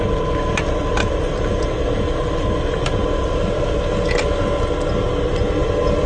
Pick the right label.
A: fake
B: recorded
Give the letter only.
B